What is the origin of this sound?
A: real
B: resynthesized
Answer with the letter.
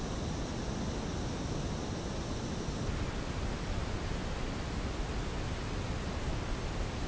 A